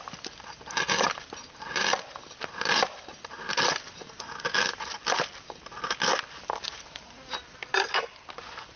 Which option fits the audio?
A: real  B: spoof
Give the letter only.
A